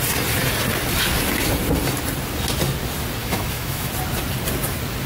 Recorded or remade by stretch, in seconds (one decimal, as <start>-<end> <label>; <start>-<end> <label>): 0.0-3.2 recorded; 3.2-3.9 remade; 3.9-5.1 recorded